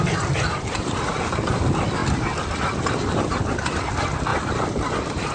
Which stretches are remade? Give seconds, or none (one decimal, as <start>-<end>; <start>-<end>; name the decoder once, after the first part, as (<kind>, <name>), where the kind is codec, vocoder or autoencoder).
4.3-5.3 (vocoder, BigVGAN v2)